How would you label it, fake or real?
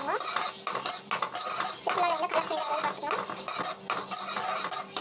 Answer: real